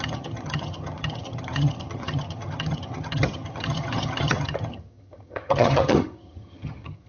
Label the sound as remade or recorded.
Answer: remade